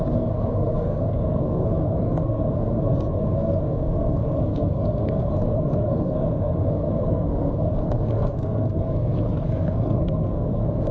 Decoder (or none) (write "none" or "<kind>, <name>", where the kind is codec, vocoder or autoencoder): codec, SNAC